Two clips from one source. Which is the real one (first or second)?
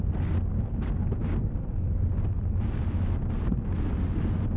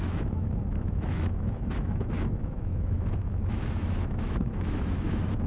first